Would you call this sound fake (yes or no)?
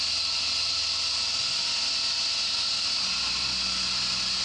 no